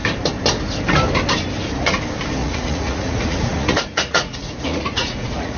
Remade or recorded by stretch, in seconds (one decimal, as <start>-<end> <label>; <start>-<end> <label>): 0.0-2.4 recorded; 2.4-5.6 remade